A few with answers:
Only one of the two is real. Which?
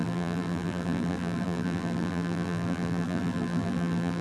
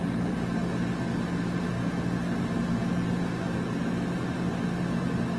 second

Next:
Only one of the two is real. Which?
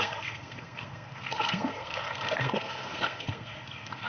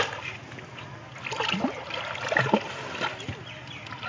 second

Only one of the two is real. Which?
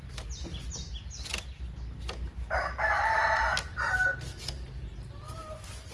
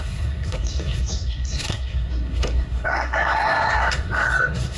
first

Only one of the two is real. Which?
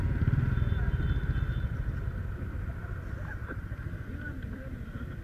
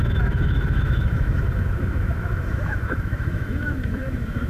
first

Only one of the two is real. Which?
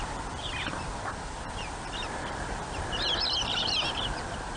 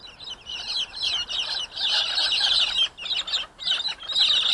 second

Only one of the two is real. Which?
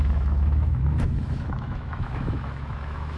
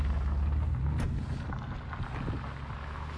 second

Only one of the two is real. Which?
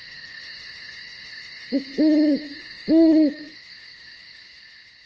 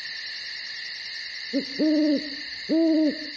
second